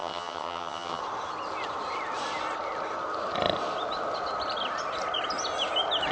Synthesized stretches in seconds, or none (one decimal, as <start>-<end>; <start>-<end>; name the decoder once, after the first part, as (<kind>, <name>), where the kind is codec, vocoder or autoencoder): 0.0-1.0 (vocoder, HiFi-GAN)

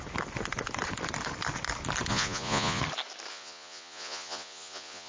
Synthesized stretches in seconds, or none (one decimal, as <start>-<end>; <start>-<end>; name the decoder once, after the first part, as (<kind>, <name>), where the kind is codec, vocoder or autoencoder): 2.1-2.8 (vocoder, Vocos); 3.3-5.1

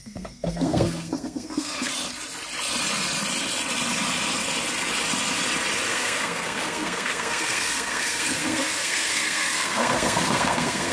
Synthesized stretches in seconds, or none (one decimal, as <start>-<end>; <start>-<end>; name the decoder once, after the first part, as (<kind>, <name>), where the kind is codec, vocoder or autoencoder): 0.0-1.9 (codec, SNAC); 5.9-10.9

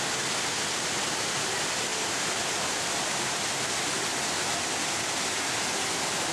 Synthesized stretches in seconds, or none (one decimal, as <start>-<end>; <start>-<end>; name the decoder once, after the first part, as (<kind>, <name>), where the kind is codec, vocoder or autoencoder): none